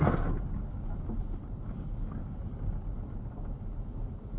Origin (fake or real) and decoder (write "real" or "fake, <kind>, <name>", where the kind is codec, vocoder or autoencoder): real